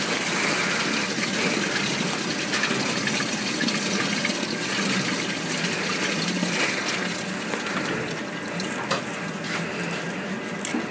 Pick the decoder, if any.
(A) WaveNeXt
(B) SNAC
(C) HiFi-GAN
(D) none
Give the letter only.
D